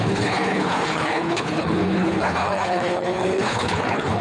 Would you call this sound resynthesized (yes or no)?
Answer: yes